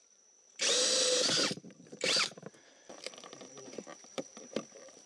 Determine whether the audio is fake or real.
fake